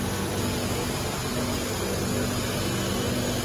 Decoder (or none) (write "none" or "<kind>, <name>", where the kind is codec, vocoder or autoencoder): none